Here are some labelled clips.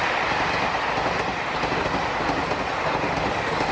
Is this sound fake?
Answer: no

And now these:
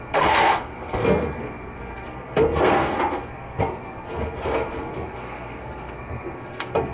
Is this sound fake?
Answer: yes